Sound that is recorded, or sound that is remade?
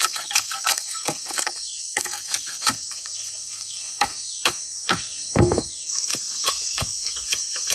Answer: remade